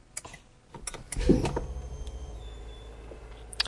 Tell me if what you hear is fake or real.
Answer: real